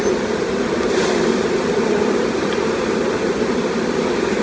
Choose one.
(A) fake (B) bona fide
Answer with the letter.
B